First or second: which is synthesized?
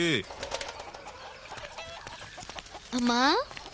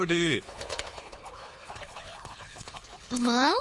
second